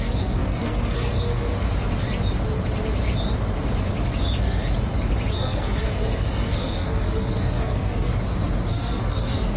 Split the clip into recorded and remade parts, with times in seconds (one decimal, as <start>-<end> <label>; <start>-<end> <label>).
0.0-1.5 remade; 1.5-5.3 recorded; 5.3-8.1 remade; 8.1-8.7 recorded; 8.7-9.6 remade